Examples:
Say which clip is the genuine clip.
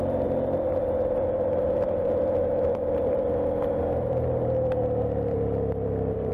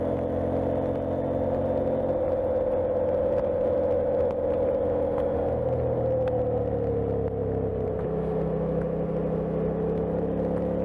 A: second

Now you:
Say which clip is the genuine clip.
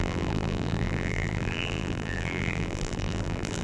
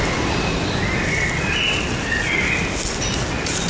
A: second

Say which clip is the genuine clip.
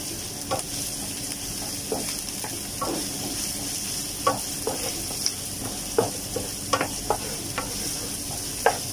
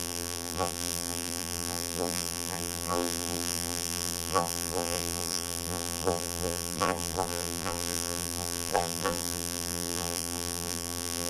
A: first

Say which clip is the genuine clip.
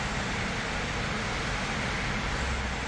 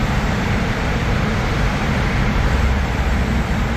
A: first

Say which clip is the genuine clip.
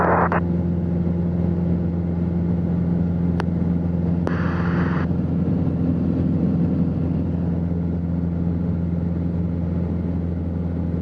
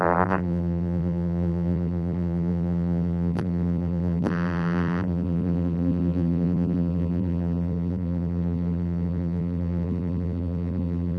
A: first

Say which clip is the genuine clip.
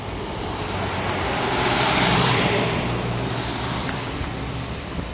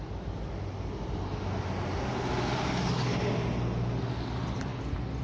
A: second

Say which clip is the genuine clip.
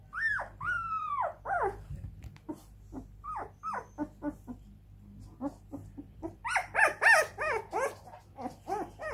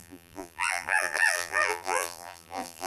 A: first